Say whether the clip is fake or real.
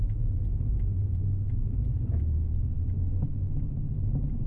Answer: fake